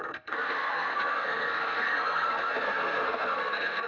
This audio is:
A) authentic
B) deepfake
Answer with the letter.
B